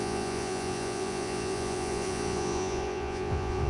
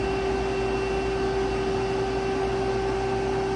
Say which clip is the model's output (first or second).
first